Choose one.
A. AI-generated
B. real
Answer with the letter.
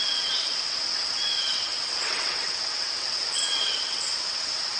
A